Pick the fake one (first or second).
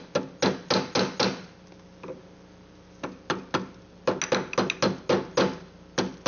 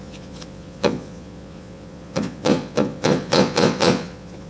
second